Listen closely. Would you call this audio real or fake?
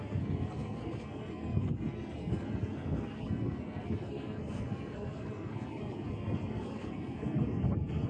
fake